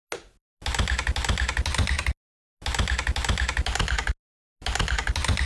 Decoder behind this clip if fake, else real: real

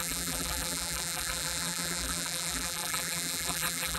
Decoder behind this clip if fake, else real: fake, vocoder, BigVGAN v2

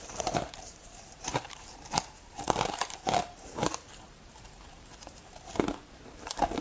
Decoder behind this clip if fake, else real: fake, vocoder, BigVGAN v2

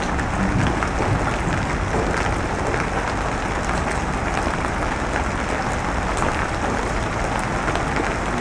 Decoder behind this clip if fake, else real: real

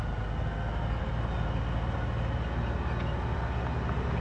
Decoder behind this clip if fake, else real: real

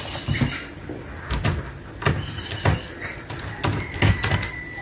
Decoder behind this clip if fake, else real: real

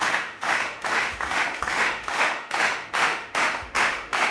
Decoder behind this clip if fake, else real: fake, autoencoder, DAC-VAE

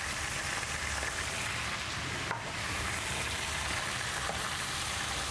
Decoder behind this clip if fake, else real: real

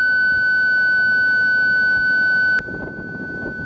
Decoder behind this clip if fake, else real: real